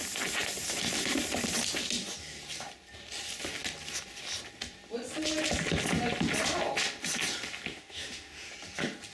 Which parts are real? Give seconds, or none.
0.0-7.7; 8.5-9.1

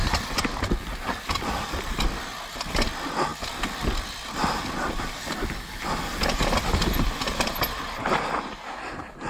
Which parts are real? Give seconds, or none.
0.0-9.3

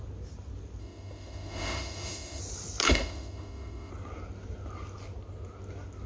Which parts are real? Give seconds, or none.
0.0-0.8; 2.4-2.8; 3.9-6.1

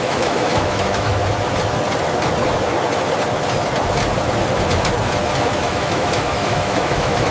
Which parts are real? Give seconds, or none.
1.2-5.6